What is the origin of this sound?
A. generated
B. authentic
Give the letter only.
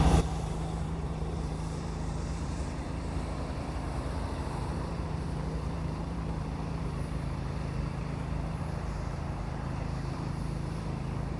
A